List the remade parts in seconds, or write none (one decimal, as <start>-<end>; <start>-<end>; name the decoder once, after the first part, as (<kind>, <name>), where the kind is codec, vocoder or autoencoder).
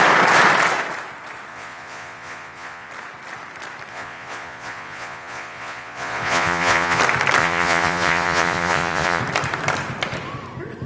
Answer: 1.5-2.9 (vocoder, Vocos); 3.9-7.0; 7.4-9.2